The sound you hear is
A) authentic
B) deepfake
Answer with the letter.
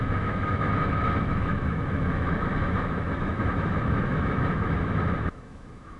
B